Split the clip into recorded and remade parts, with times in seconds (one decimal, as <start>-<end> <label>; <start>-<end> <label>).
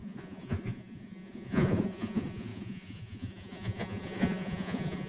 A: 0.0-5.1 remade